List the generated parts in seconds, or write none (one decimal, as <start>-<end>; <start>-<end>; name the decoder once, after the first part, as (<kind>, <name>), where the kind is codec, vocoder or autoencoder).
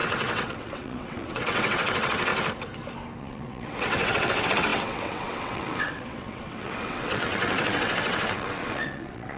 0.0-2.3 (vocoder, WaveNeXt); 3.2-9.4